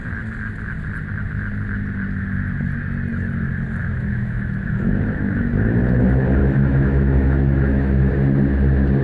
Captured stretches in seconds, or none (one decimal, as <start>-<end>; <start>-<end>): 0.0-3.8; 6.0-6.4; 8.1-9.0